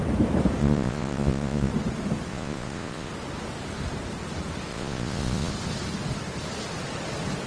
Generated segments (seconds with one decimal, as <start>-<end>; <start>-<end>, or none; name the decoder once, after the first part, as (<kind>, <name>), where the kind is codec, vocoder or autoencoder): 0.6-1.7 (vocoder, Vocos); 2.3-3.1; 4.7-5.5